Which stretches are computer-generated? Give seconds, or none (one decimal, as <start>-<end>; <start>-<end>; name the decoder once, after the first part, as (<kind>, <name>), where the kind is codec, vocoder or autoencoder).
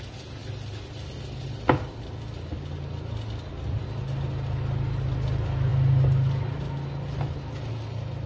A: none